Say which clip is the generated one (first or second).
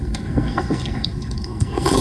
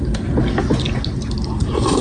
first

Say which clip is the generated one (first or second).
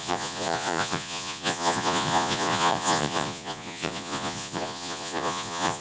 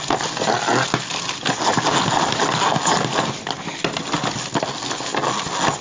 first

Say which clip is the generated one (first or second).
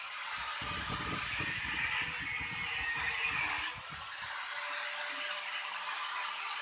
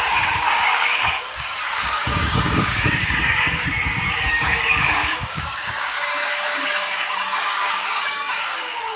second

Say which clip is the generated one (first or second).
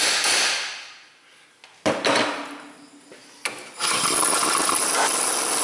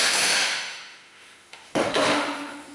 second